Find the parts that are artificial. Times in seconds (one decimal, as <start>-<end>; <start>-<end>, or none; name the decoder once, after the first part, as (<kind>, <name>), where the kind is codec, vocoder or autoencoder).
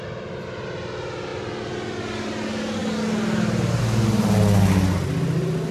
none